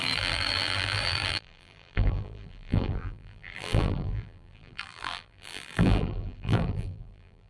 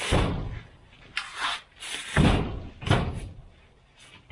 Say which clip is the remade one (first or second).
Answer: first